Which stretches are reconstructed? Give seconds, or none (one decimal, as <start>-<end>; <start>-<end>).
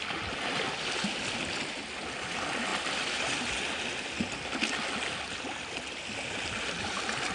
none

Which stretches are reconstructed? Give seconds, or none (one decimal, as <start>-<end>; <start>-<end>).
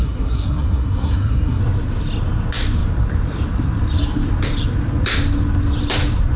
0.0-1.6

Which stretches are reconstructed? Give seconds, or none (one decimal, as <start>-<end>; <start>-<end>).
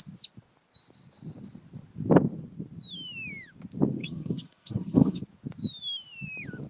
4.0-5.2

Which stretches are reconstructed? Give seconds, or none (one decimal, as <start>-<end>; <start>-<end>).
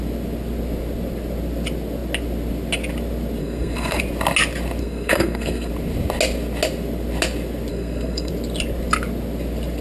3.4-4.0; 4.8-5.7; 7.7-8.3